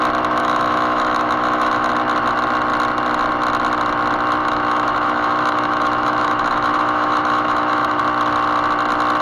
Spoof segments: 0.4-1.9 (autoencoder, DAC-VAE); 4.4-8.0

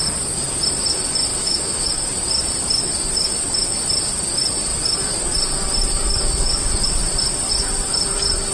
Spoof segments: 1.3-1.9 (autoencoder, DAC-VAE)

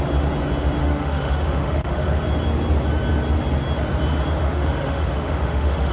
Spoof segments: 0.8-2.2 (autoencoder, DAC-VAE); 4.4-5.9

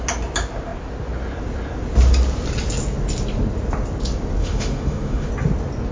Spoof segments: 4.4-5.3 (autoencoder, DAC-VAE)

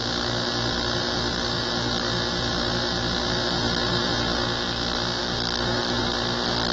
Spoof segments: 5.2-6.0 (autoencoder, DAC-VAE)

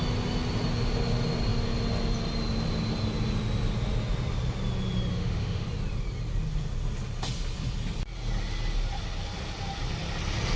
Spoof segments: 5.1-5.7 (autoencoder, DAC-VAE)

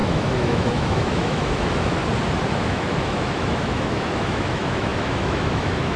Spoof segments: 0.0-2.0 (autoencoder, DAC-VAE); 2.5-6.0